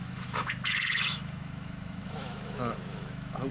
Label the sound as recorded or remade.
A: remade